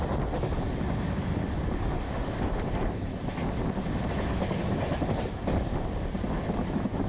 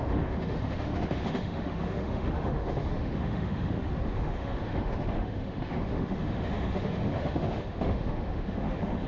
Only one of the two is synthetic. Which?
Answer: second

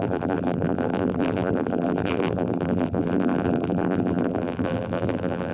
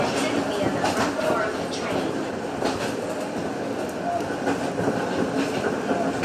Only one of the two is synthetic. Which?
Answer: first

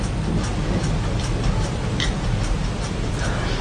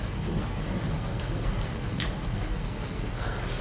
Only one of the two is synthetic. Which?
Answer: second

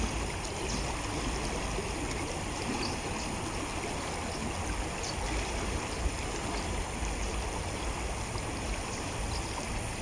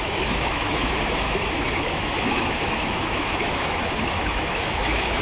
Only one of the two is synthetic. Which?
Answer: second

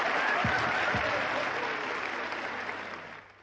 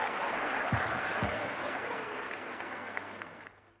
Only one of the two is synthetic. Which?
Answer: second